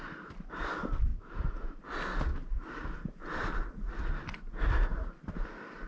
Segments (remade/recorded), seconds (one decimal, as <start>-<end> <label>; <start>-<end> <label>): 0.0-2.3 recorded; 2.3-3.7 remade; 3.7-5.9 recorded